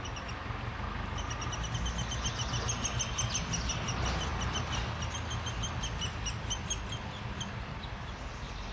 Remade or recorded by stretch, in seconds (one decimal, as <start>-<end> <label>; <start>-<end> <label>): 0.0-8.7 recorded